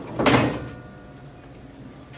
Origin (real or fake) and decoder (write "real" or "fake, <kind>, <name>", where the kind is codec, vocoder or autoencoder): real